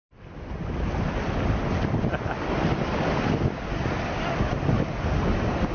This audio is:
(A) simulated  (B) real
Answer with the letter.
B